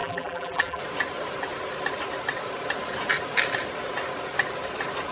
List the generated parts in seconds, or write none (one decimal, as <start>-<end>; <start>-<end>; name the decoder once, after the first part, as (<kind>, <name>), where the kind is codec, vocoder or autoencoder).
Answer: 0.0-0.8 (vocoder, BigVGAN v2)